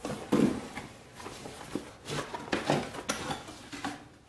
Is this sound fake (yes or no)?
no